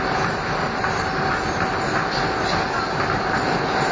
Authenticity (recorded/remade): recorded